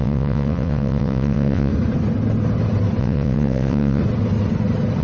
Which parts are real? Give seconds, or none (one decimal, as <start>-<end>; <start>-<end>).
1.7-3.0; 4.0-5.0